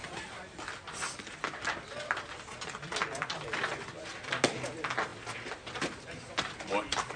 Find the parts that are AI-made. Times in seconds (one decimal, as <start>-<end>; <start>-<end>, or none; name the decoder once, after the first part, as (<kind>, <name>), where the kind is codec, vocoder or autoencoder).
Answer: none